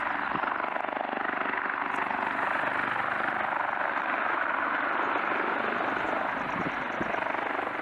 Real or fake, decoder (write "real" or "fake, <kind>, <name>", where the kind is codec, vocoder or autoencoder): real